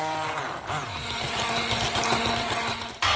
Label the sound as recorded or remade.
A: recorded